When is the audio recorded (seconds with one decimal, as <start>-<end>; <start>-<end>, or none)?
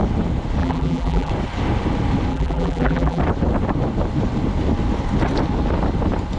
0.0-0.6; 1.3-2.3; 3.2-6.4